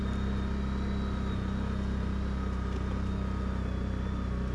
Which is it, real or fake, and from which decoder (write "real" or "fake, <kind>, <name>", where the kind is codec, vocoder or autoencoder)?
real